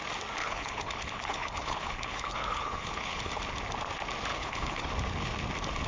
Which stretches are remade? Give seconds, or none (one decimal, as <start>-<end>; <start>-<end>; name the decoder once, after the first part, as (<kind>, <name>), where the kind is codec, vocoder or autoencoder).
0.4-3.3 (codec, HILCodec); 4.3-4.9